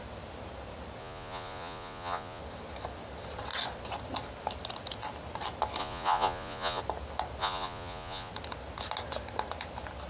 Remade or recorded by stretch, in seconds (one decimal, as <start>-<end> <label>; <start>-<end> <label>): 0.0-1.0 recorded; 1.0-2.4 remade; 2.4-5.8 recorded; 5.8-6.8 remade; 6.8-7.4 recorded; 7.4-8.3 remade; 8.3-10.1 recorded